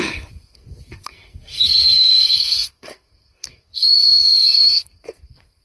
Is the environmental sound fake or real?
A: fake